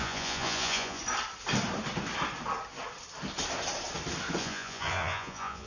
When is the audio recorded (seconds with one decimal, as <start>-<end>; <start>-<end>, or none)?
1.0-4.4